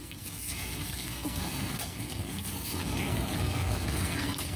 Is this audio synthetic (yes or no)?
yes